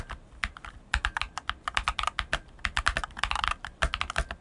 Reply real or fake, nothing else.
real